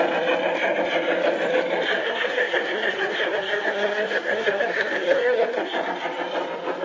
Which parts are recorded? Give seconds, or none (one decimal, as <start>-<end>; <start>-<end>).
0.0-2.0; 5.8-6.8